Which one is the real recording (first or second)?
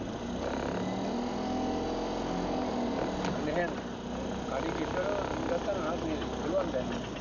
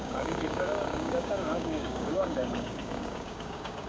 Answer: first